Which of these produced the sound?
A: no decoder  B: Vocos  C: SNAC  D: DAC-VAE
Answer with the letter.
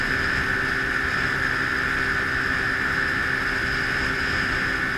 A